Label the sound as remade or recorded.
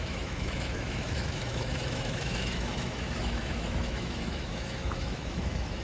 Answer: remade